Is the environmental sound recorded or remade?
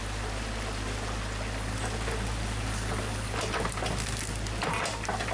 recorded